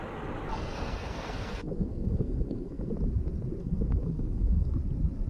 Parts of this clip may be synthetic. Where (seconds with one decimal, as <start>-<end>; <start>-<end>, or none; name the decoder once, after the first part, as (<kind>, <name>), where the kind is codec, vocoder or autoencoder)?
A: 0.5-2.9 (codec, SNAC); 3.6-4.7